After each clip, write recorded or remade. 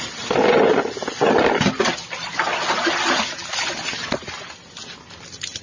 recorded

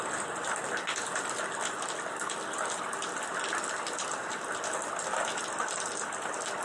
recorded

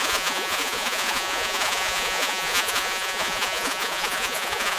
remade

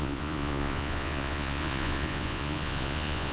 remade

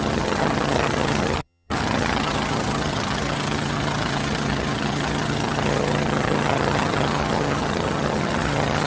remade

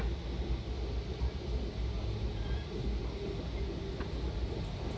recorded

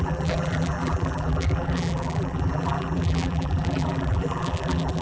remade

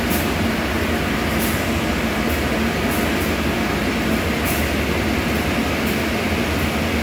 recorded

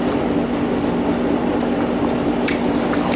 recorded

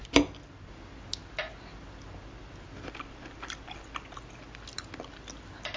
recorded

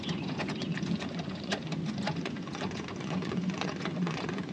remade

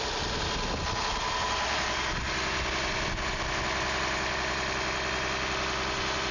recorded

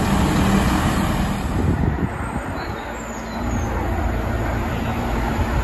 recorded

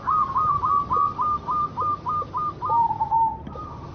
recorded